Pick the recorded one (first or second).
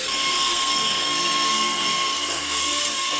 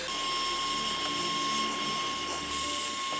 second